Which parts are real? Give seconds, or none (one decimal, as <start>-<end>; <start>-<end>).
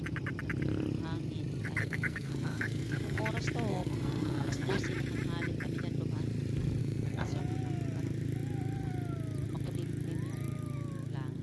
0.0-1.8; 3.2-3.7; 4.7-6.8; 7.4-11.4